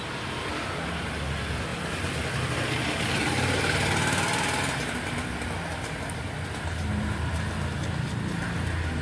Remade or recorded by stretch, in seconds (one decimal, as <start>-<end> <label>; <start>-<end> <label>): 0.0-9.0 recorded